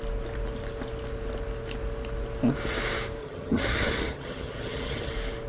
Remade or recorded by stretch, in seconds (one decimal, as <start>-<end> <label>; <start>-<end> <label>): 0.0-3.2 recorded; 3.2-5.1 remade; 5.1-5.5 recorded